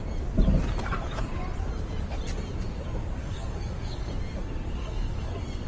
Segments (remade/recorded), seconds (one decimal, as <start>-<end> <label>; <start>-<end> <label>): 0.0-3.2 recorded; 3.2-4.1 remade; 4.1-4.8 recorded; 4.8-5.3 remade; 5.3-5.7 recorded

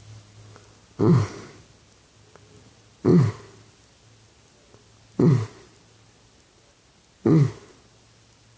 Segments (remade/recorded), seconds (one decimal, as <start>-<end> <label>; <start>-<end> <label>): 0.0-8.6 recorded

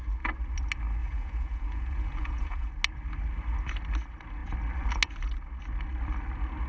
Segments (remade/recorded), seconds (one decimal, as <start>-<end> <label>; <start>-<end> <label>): 0.0-1.0 recorded; 1.0-2.7 remade; 2.7-6.7 recorded

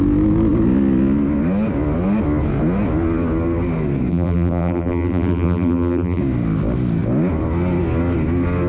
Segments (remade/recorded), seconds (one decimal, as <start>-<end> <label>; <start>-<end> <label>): 0.0-4.1 recorded; 4.1-6.2 remade; 6.2-8.7 recorded